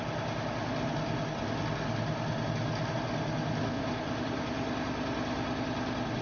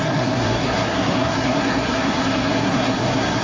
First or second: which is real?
first